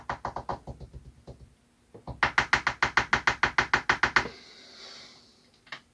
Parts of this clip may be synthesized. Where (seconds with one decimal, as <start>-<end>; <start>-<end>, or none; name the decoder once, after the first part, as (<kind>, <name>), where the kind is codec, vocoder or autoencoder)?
none